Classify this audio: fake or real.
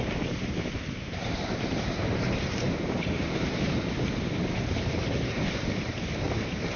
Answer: fake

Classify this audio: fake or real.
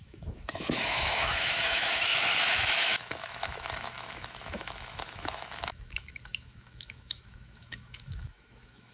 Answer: fake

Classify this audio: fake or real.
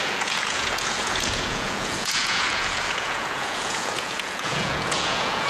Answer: fake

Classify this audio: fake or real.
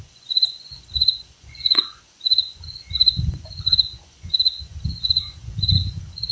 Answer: fake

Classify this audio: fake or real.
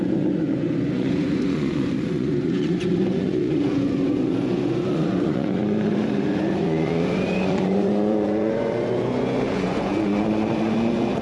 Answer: fake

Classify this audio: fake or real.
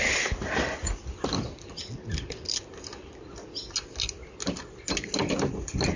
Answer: real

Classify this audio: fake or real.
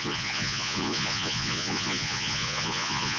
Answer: fake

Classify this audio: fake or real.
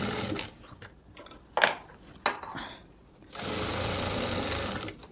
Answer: real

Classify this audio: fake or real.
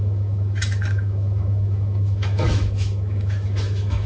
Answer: fake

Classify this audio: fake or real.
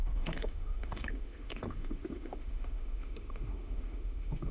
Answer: fake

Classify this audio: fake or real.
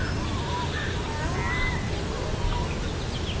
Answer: real